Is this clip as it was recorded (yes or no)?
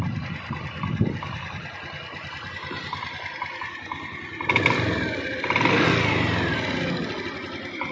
yes